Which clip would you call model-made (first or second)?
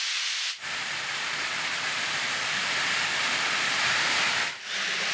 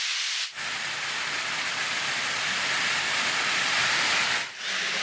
first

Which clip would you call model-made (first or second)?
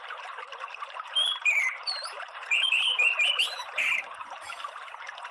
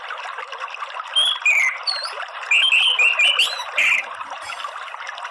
first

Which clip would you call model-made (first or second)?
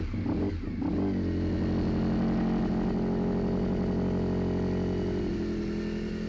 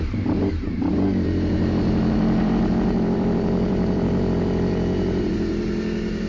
second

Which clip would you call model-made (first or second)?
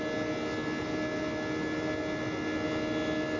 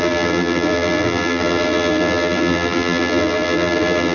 second